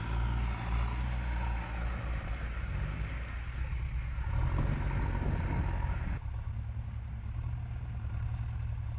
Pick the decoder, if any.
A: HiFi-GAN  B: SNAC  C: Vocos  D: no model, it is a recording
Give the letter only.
D